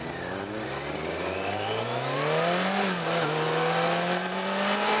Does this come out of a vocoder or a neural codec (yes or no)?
no